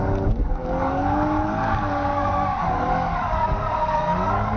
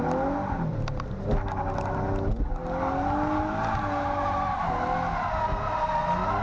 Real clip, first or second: second